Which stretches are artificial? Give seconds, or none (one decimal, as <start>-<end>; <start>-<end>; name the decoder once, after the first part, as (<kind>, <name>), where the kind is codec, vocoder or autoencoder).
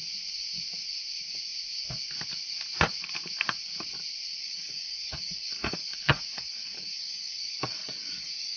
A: 4.4-8.6 (codec, DAC)